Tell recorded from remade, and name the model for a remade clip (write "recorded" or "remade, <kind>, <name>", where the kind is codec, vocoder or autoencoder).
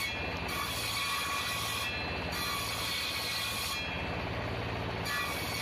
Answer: recorded